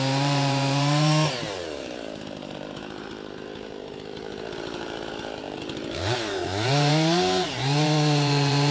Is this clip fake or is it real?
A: fake